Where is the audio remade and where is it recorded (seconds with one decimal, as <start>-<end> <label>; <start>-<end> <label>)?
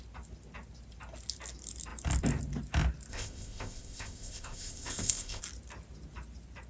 0.0-3.1 recorded; 3.1-5.4 remade; 5.4-6.7 recorded